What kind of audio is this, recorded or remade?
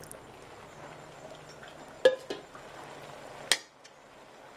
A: recorded